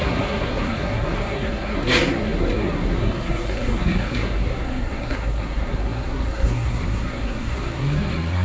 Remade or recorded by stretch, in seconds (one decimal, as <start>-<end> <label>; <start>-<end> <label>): 0.0-8.4 remade